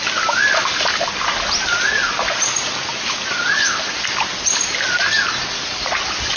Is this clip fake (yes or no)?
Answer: no